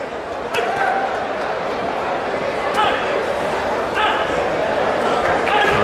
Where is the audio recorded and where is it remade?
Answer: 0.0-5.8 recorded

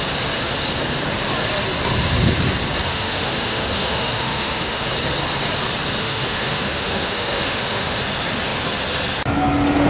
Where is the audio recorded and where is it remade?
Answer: 0.0-2.9 recorded; 2.9-4.9 remade; 4.9-6.0 recorded; 6.0-8.0 remade; 8.0-9.9 recorded

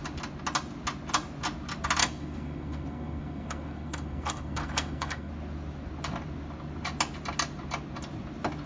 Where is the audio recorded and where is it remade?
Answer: 0.0-2.0 recorded; 2.0-5.3 remade; 5.3-8.7 recorded

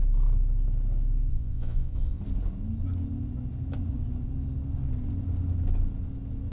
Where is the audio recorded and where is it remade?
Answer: 0.0-1.3 recorded; 1.3-2.2 remade; 2.2-6.5 recorded

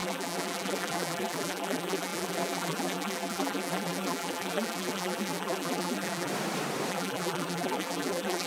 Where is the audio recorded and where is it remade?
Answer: 0.0-6.3 remade; 6.3-6.9 recorded; 6.9-8.5 remade